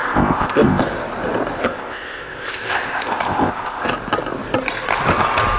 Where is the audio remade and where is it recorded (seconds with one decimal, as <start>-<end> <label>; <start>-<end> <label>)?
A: 0.0-0.8 remade; 0.8-1.6 recorded; 1.6-3.9 remade; 3.9-5.6 recorded

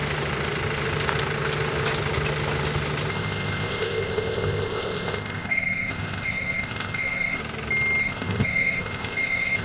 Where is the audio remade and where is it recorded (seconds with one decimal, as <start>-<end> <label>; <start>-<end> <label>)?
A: 0.0-3.1 recorded; 3.1-7.4 remade; 7.4-8.0 recorded; 8.0-9.6 remade

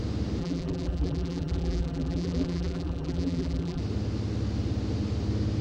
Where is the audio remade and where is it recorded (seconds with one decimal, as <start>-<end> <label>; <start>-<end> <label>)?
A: 0.0-0.4 recorded; 0.4-3.8 remade; 3.8-5.6 recorded

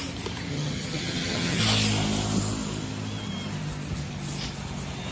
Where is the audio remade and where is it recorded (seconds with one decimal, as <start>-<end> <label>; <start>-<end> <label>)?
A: 0.0-0.5 recorded; 0.5-1.6 remade; 1.6-5.1 recorded

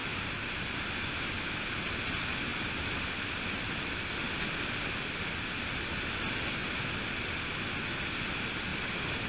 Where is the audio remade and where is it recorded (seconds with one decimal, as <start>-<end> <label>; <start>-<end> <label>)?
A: 0.0-0.9 remade; 0.9-9.3 recorded

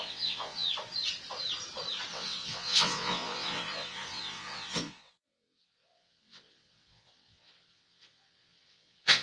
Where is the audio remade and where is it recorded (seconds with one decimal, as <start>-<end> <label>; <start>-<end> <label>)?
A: 0.0-0.7 remade; 0.7-2.1 recorded; 2.1-9.2 remade

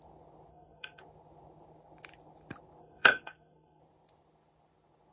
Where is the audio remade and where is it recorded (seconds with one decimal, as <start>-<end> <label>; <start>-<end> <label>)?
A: 0.0-0.5 recorded; 0.5-1.0 remade; 1.0-2.8 recorded; 2.8-3.8 remade; 3.8-5.1 recorded